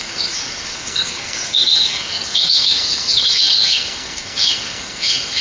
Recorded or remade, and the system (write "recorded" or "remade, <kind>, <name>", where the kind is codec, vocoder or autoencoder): remade, codec, SNAC